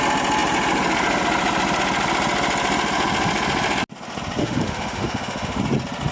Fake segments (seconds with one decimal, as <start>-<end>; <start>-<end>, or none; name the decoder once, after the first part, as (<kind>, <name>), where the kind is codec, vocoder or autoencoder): 4.4-5.6 (autoencoder, DAC-VAE)